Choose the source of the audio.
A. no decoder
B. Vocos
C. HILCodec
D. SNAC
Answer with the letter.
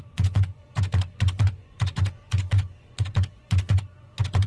B